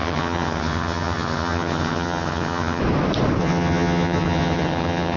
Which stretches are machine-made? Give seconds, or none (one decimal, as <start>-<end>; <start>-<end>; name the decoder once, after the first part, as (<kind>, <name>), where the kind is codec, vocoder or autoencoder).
0.0-2.8 (vocoder, HiFi-GAN); 3.4-5.2